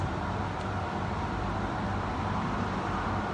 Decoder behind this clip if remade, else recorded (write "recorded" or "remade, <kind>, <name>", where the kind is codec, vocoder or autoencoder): recorded